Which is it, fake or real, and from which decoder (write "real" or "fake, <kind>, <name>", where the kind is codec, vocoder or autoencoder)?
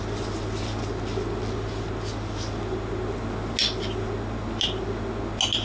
real